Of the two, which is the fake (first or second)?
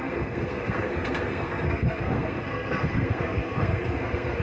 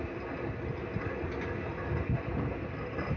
first